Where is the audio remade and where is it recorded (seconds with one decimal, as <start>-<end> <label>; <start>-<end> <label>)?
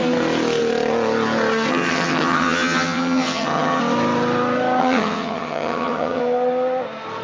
0.0-1.7 recorded; 1.7-3.8 remade; 3.8-4.8 recorded; 4.8-6.2 remade; 6.2-7.2 recorded